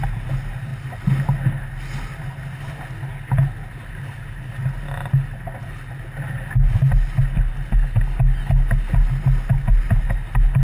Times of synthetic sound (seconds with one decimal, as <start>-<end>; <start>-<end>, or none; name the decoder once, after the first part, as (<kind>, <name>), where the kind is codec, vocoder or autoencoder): none